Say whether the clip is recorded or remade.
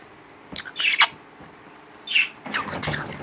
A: recorded